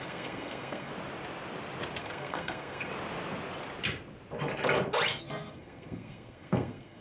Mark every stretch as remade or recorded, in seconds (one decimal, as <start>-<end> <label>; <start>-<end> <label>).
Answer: 0.0-0.9 remade; 0.9-2.0 recorded; 2.0-2.9 remade; 2.9-5.2 recorded; 5.2-7.0 remade